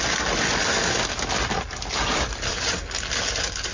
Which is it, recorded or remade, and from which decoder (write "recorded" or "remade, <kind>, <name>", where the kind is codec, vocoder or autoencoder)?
recorded